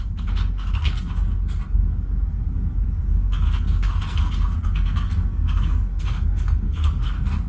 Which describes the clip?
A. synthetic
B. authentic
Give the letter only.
A